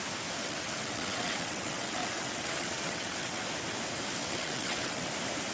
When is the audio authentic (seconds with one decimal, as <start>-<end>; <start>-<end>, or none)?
0.0-0.4; 3.4-4.2; 5.1-5.5